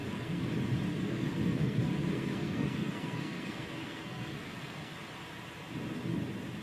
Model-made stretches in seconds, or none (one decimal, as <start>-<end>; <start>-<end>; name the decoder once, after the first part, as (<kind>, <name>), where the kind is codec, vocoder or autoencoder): 0.0-0.5 (codec, SNAC); 0.9-4.9